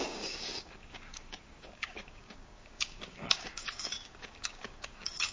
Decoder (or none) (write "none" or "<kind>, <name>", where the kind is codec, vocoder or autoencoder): codec, DAC